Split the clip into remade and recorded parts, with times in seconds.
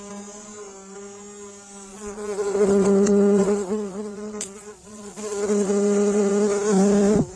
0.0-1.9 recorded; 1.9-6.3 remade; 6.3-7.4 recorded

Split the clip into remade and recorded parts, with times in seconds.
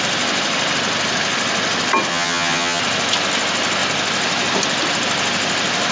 0.0-2.1 recorded; 2.1-2.8 remade; 2.8-5.9 recorded